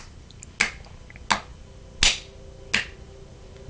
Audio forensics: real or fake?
real